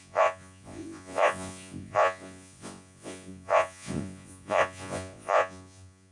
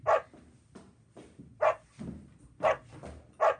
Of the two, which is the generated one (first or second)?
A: first